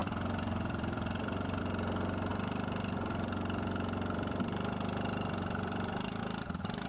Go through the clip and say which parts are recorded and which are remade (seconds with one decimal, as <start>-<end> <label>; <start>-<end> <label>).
0.0-1.6 remade; 1.6-2.3 recorded; 2.3-6.2 remade; 6.2-6.9 recorded